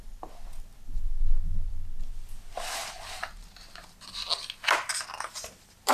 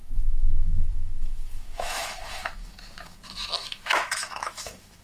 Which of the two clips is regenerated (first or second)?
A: second